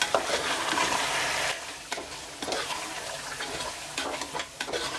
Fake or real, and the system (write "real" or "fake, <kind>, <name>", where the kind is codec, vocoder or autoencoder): real